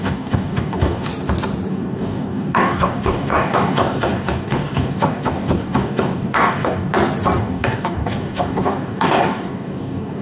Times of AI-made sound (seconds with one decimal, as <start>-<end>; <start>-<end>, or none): 0.0-1.1; 1.7-6.9; 7.4-10.2